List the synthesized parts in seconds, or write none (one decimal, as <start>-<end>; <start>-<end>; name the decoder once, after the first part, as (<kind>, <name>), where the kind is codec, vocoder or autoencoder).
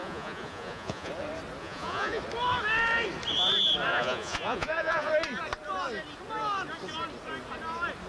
0.0-1.1 (vocoder, Vocos); 1.6-2.2; 3.9-5.1